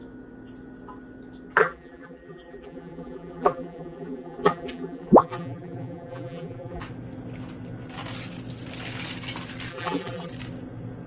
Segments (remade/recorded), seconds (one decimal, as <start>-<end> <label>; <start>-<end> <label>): 0.0-1.6 recorded; 1.6-6.8 remade; 6.8-9.7 recorded; 9.7-10.3 remade; 10.3-11.1 recorded